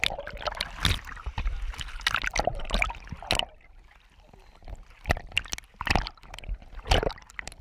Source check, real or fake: real